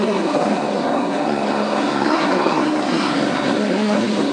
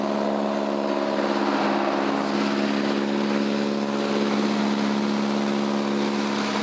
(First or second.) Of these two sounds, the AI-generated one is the first